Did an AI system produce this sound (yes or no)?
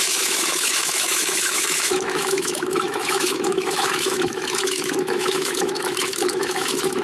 yes